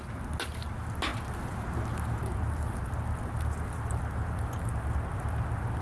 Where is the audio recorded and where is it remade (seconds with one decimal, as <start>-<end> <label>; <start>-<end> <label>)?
0.0-5.8 recorded

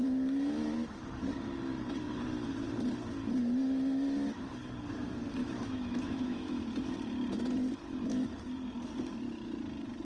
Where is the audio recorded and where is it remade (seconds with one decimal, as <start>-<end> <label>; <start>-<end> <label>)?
0.0-5.4 recorded; 5.4-6.6 remade; 6.6-10.0 recorded

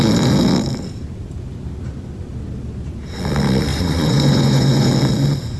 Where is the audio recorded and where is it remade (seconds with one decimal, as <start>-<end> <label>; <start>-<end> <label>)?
0.0-3.7 recorded; 3.7-4.9 remade; 4.9-5.6 recorded

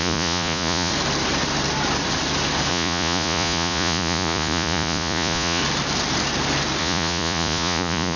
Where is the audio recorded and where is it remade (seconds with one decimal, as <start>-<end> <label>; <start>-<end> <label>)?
0.0-0.9 remade; 0.9-2.7 recorded; 2.7-5.6 remade; 5.6-6.8 recorded; 6.8-8.2 remade

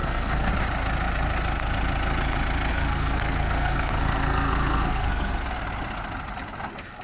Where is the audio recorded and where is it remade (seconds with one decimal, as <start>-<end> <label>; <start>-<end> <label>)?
0.0-0.5 remade; 0.5-2.7 recorded; 2.7-5.4 remade; 5.4-7.0 recorded

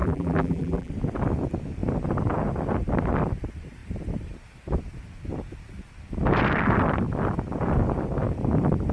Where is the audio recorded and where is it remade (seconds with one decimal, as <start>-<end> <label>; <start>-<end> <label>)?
0.0-0.9 remade; 0.9-8.9 recorded

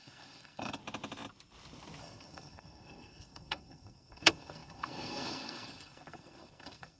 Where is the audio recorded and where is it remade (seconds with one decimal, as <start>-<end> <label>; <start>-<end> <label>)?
0.0-0.8 remade; 0.8-2.0 recorded; 2.0-7.0 remade

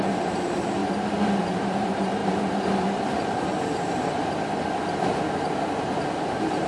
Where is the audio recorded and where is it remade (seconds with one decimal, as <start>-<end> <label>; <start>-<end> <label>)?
0.0-0.8 remade; 0.8-1.4 recorded; 1.4-2.2 remade; 2.2-6.2 recorded; 6.2-6.7 remade